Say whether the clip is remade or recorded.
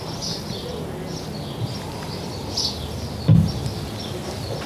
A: recorded